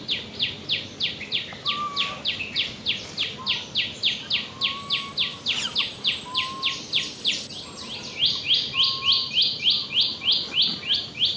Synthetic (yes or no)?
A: no